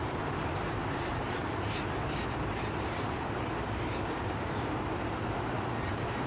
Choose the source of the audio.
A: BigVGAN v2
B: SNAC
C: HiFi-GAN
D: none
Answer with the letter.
A